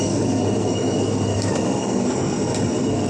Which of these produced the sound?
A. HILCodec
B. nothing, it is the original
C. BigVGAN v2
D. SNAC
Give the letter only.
D